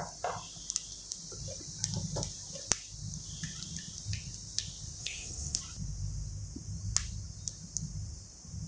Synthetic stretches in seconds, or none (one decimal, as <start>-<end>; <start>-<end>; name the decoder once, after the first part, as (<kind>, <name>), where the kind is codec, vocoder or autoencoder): 5.0-5.6 (codec, SNAC)